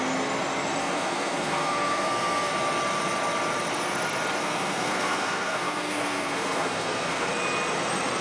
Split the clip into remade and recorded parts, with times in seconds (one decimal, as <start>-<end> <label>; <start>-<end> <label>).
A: 0.0-0.8 recorded; 0.8-2.5 remade; 2.5-4.4 recorded; 4.4-7.3 remade; 7.3-8.2 recorded